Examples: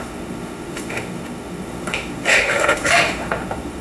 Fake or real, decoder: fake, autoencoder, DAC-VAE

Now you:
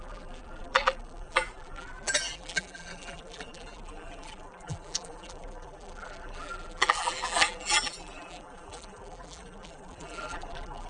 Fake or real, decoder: fake, vocoder, BigVGAN v2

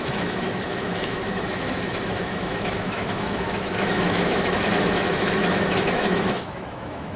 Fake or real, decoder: fake, autoencoder, DAC-VAE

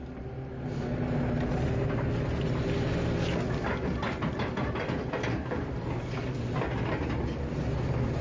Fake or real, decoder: real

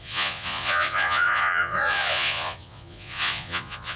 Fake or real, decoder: fake, vocoder, Vocos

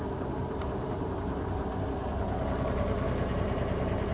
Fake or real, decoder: real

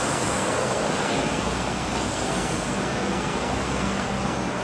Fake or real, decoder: fake, codec, SNAC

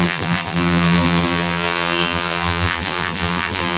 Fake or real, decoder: fake, vocoder, BigVGAN v2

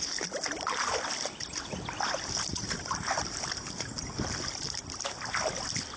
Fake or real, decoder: real